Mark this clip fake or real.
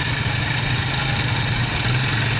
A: real